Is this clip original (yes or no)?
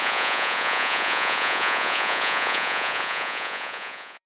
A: no